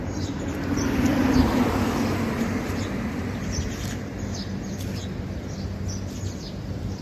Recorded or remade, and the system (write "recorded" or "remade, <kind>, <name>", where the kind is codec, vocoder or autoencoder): recorded